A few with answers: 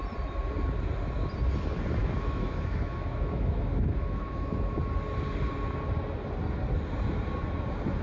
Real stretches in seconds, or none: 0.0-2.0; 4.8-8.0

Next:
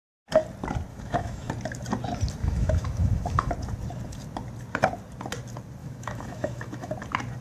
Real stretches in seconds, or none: 0.0-0.9; 1.5-2.4; 3.5-5.8; 6.9-7.4

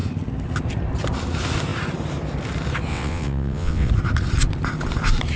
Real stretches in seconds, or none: 0.0-2.9; 3.9-5.4

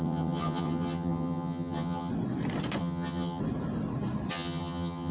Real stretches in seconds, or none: 2.1-2.8; 3.4-4.3

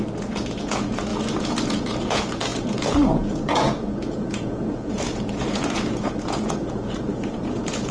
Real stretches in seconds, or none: none

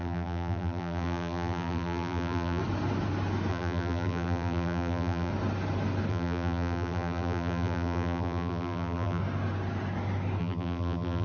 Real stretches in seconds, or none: 2.6-3.5; 5.3-6.1; 9.2-10.4

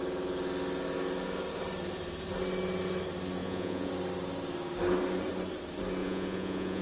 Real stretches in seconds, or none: 0.0-3.4; 3.9-6.0

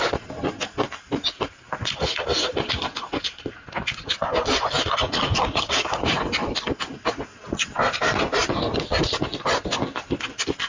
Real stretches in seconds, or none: 0.0-10.7